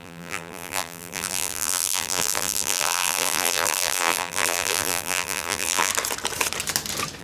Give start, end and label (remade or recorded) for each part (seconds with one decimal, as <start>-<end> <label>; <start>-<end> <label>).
0.0-5.9 remade; 5.9-7.2 recorded